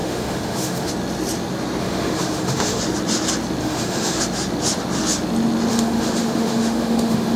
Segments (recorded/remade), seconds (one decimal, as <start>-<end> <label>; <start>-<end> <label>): 0.0-0.9 remade; 0.9-1.8 recorded; 1.8-2.8 remade; 2.8-3.6 recorded; 3.6-4.2 remade; 4.2-5.7 recorded; 5.7-7.4 remade